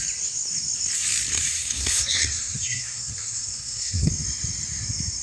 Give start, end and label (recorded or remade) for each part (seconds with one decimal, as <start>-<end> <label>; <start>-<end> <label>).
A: 0.0-1.3 recorded; 1.3-4.1 remade; 4.1-5.2 recorded